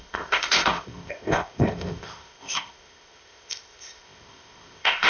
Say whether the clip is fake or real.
fake